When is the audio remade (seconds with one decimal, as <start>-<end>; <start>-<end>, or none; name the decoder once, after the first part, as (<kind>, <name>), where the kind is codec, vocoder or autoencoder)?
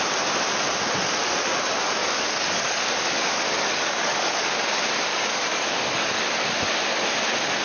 2.0-4.5 (codec, DAC); 5.1-6.5